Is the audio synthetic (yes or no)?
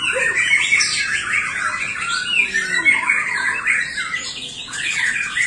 no